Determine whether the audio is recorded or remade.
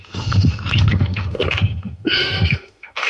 remade